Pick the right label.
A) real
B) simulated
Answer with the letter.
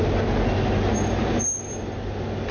A